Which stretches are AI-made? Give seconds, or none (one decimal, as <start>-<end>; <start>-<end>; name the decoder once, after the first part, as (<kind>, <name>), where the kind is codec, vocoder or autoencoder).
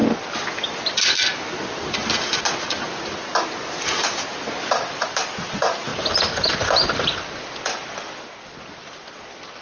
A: 0.0-4.5 (vocoder, BigVGAN v2); 5.9-7.3